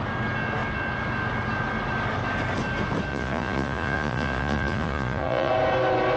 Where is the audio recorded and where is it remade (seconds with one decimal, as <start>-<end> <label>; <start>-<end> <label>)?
0.0-3.1 recorded; 3.1-5.5 remade; 5.5-6.2 recorded